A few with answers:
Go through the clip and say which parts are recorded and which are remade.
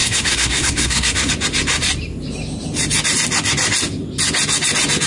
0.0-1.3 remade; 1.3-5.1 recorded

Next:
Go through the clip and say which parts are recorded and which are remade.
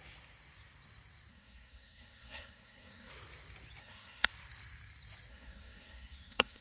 0.0-1.3 recorded; 1.3-3.1 remade; 3.1-3.8 recorded; 3.8-4.3 remade; 4.3-5.3 recorded; 5.3-6.6 remade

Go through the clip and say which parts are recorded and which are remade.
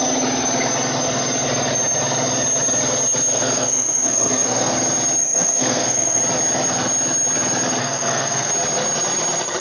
0.0-3.3 recorded; 3.3-4.7 remade; 4.7-5.2 recorded; 5.2-6.2 remade; 6.2-7.8 recorded; 7.8-8.5 remade; 8.5-9.6 recorded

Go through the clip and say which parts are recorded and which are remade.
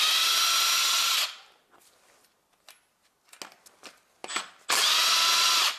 0.0-5.8 recorded